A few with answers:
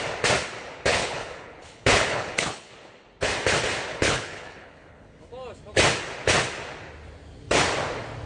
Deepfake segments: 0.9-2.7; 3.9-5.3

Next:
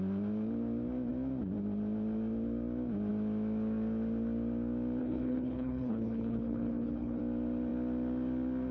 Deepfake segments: 5.0-7.2

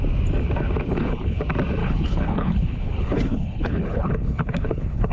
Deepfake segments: 0.9-1.4; 1.8-5.1

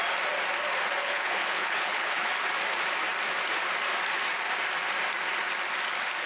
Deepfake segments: 1.0-2.3